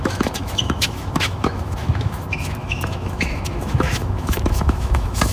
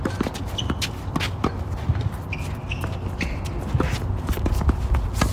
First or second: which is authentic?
second